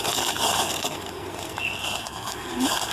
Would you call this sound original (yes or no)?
no